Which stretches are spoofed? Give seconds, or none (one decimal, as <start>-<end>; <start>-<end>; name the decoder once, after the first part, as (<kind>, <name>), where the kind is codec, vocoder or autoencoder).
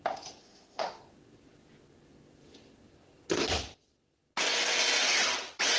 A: 0.4-1.0 (autoencoder, DAC-VAE)